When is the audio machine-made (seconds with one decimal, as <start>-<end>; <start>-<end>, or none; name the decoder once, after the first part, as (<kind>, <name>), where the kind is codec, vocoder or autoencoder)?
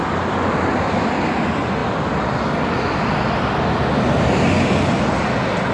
none